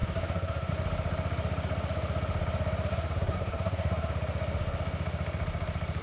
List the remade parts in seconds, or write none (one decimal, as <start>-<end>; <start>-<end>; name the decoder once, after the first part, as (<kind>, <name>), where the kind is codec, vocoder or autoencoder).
0.0-0.7 (codec, SNAC); 2.9-4.1